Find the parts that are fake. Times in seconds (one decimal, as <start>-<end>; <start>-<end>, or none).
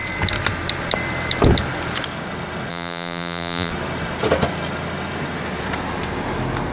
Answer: 2.7-3.7